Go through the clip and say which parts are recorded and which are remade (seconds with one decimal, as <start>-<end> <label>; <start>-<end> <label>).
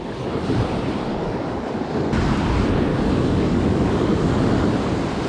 0.0-1.1 recorded; 1.1-1.8 remade; 1.8-2.9 recorded; 2.9-4.7 remade; 4.7-5.3 recorded